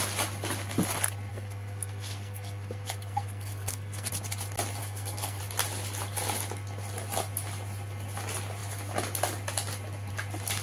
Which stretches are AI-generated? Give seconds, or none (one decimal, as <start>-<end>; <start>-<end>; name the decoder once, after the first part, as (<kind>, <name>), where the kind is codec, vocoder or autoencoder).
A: 1.3-4.1 (codec, SNAC); 4.8-5.4